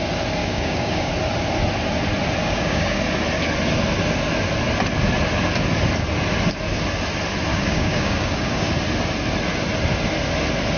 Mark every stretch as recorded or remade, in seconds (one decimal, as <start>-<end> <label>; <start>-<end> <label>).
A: 0.0-0.4 recorded; 0.4-1.1 remade; 1.1-2.4 recorded; 2.4-3.0 remade; 3.0-7.5 recorded; 7.5-8.7 remade; 8.7-10.8 recorded